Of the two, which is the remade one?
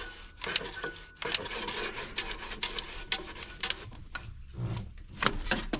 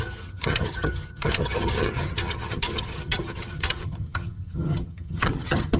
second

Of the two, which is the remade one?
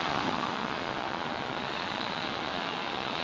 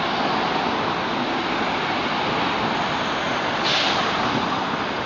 first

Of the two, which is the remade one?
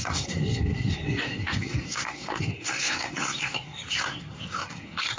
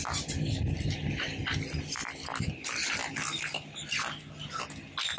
first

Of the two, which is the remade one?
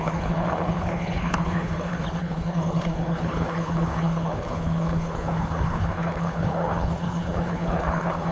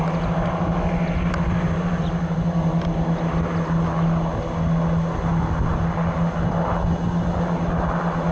first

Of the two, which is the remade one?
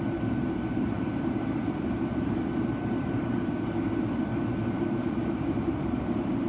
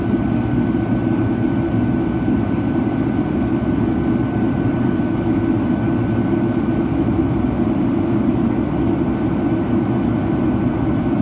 first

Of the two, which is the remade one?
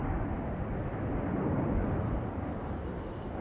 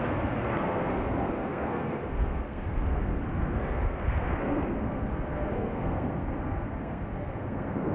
second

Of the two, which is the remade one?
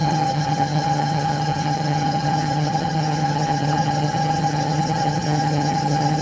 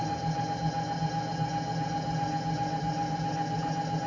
first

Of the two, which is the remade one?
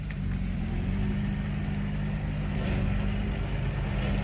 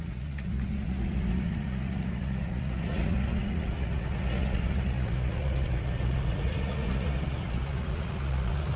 second